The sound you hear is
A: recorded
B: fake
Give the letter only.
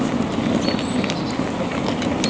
A